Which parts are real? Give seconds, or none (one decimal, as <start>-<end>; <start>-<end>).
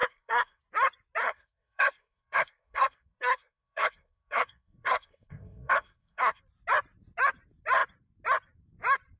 0.6-1.2; 6.4-9.2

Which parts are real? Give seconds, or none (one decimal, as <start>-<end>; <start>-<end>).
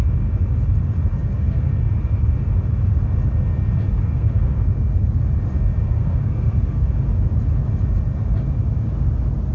0.0-1.1; 1.7-3.9; 4.5-5.8; 6.9-9.5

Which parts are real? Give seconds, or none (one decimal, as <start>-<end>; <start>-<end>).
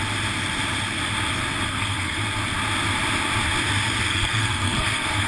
0.0-1.7; 2.2-4.1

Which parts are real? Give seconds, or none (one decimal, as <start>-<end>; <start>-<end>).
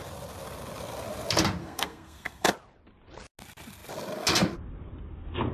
0.0-1.6; 2.5-5.5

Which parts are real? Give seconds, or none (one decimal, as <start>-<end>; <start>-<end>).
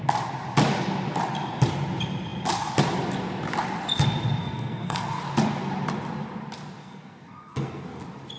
0.0-4.4; 5.2-6.8; 8.0-8.4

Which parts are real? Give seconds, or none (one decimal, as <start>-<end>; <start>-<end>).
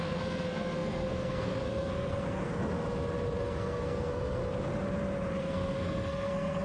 2.6-3.4; 4.4-5.4